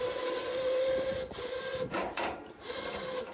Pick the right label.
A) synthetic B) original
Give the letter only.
A